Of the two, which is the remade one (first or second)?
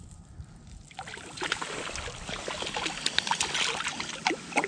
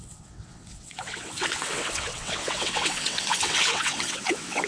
second